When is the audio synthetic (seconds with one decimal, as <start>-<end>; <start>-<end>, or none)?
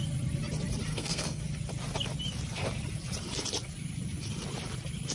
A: 0.9-1.4